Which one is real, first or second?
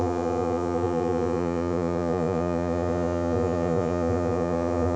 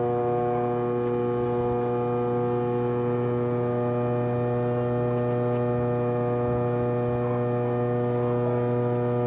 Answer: second